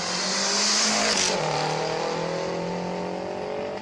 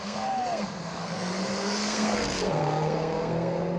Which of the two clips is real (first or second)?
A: first